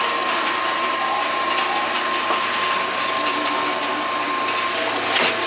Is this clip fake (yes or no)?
no